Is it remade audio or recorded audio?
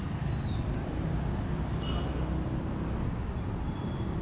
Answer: recorded